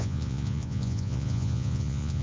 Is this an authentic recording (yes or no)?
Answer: no